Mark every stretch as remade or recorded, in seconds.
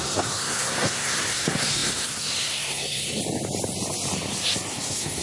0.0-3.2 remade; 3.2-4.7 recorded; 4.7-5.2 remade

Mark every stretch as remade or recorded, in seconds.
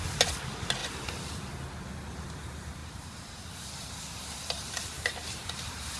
0.0-0.8 recorded; 0.8-1.3 remade; 1.3-2.8 recorded; 2.8-6.0 remade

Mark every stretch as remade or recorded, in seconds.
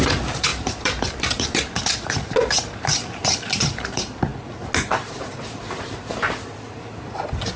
0.0-4.3 remade; 4.3-5.0 recorded; 5.0-7.6 remade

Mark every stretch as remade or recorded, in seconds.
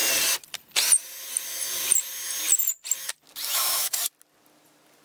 0.0-3.5 recorded; 3.5-4.0 remade; 4.0-5.0 recorded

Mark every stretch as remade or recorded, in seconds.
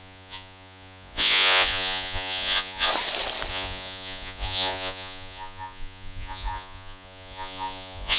0.0-2.9 remade; 2.9-3.5 recorded; 3.5-8.2 remade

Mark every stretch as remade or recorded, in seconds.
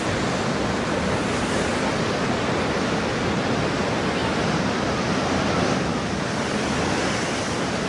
0.0-7.9 recorded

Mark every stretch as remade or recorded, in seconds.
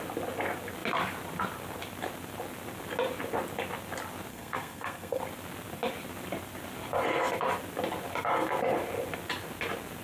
0.0-4.3 recorded; 4.3-5.2 remade; 5.2-10.0 recorded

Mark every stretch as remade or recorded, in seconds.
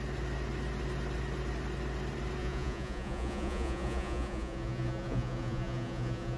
0.0-2.4 recorded; 2.4-6.4 remade